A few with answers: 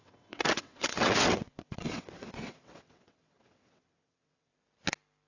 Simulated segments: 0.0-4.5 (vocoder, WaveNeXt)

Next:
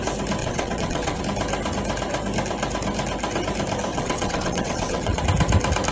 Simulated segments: 0.4-1.2 (vocoder, WaveNeXt); 3.9-5.2